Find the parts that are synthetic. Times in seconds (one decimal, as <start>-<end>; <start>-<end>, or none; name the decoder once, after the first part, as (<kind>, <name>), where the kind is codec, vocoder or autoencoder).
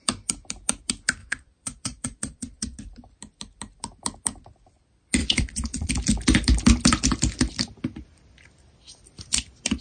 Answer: 1.2-2.8 (vocoder, Vocos); 5.2-5.9